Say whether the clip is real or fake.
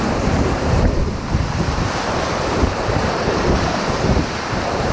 fake